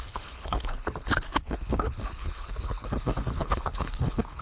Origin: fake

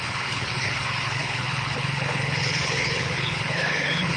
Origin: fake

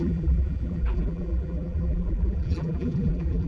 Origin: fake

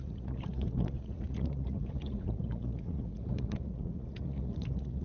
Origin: fake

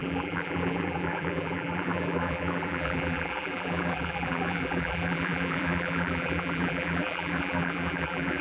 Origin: fake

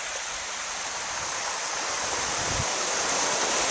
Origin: real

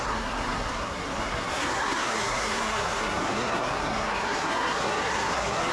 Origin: fake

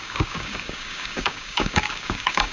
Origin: fake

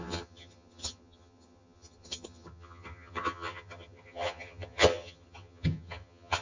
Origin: fake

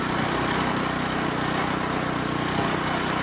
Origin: real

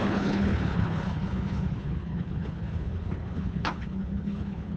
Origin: fake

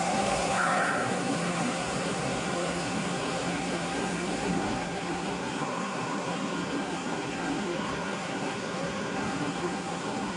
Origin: fake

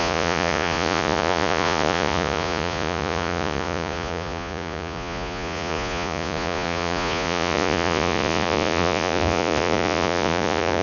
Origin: fake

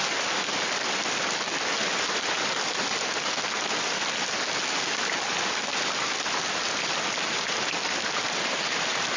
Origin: real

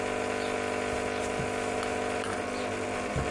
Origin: real